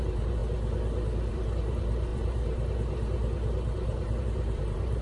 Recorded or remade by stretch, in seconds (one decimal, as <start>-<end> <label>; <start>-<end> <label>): 0.0-0.4 remade; 0.4-1.3 recorded; 1.3-5.0 remade